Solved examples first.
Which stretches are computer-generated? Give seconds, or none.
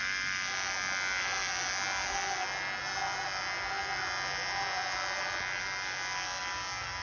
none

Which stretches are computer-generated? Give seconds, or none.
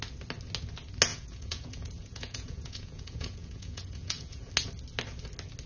1.1-4.5 (vocoder, Vocos)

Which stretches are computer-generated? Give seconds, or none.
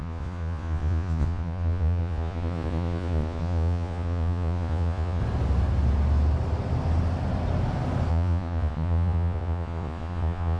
0.0-5.2 (vocoder, Vocos); 8.1-10.6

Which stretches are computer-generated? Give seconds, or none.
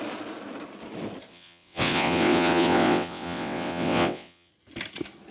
1.3-4.5 (vocoder, WaveNeXt)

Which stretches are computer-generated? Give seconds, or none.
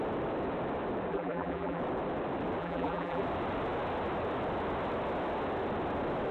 1.1-1.8 (vocoder, BigVGAN v2); 2.6-3.2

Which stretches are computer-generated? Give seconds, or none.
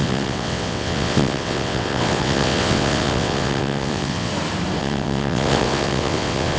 0.0-4.3 (vocoder, WaveNeXt); 4.8-6.6